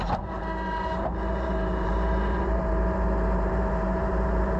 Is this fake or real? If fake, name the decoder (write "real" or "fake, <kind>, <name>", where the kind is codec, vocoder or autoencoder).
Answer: fake, vocoder, BigVGAN v2